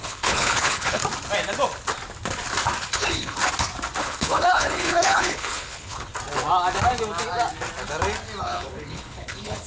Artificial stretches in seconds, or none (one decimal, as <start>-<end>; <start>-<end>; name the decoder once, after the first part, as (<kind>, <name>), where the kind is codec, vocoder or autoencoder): 0.0-1.0 (codec, HILCodec); 2.9-3.4; 4.0-6.1; 8.4-9.7